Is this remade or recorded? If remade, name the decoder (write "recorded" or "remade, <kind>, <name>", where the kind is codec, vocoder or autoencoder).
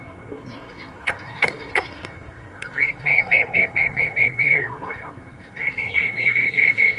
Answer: remade, codec, SNAC